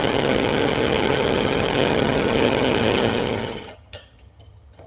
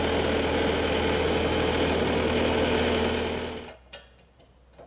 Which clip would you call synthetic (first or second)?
first